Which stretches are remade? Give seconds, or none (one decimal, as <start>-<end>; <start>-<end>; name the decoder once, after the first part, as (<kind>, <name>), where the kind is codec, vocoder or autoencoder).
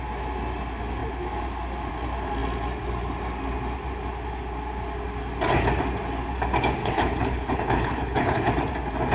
6.8-8.5 (codec, HILCodec)